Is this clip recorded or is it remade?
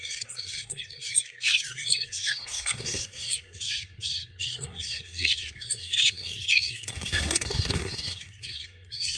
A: remade